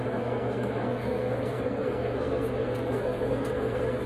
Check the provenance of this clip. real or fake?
fake